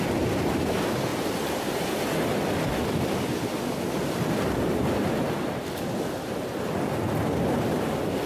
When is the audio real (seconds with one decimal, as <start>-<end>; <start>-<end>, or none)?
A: 0.0-8.3